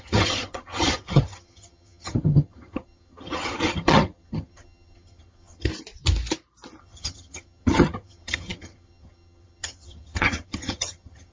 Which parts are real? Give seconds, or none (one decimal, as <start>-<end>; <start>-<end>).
5.7-6.8